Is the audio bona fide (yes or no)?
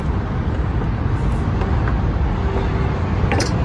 yes